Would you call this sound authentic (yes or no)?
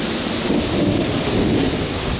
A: yes